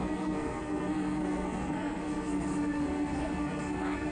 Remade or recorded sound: remade